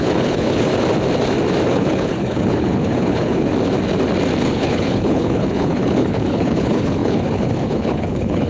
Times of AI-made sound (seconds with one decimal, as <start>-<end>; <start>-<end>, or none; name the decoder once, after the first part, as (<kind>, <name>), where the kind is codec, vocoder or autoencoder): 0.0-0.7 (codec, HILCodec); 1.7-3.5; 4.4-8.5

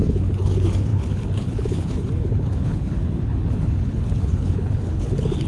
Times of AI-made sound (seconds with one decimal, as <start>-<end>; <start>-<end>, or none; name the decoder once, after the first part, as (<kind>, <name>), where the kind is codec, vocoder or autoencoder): 0.0-5.5 (codec, HILCodec)

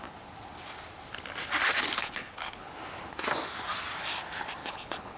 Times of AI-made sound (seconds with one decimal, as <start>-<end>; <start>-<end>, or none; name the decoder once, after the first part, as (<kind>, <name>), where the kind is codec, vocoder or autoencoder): 2.0-2.7 (codec, HILCodec); 4.6-5.2

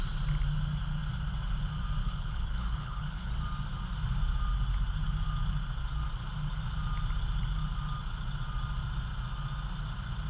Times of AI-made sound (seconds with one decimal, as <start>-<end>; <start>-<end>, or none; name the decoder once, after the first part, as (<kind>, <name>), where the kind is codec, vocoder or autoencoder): 2.0-3.3 (codec, HILCodec)